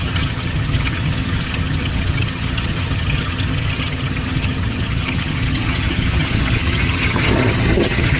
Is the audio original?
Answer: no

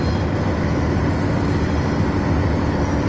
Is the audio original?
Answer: yes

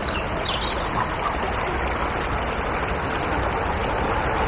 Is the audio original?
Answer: yes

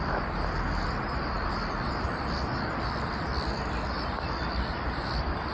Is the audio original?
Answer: yes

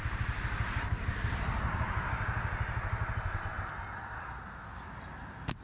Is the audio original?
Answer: yes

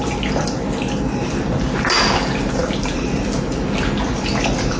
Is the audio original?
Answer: yes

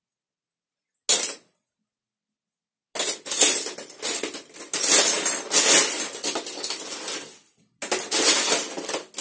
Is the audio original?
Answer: yes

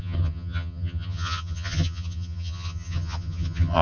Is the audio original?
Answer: no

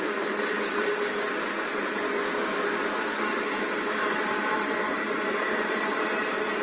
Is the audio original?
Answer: yes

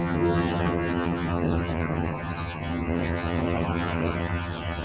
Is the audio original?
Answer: no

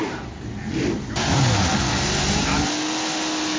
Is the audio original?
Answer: yes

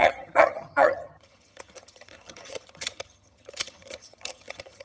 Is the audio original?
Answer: no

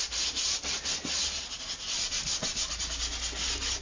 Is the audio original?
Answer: yes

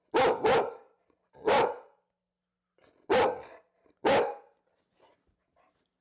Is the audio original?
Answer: yes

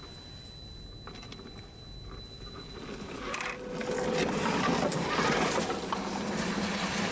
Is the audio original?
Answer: yes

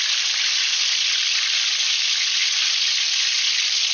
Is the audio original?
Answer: yes